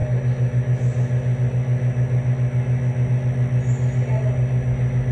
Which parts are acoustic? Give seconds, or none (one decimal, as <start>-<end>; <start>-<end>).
0.0-5.1